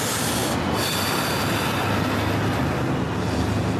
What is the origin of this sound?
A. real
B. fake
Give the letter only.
A